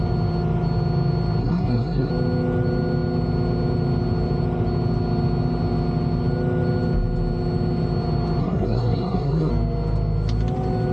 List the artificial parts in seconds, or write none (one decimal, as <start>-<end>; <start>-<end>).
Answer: 1.4-2.1; 8.4-9.5